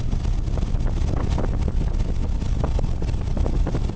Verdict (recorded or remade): recorded